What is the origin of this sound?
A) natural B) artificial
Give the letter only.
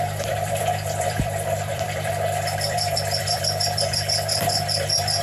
B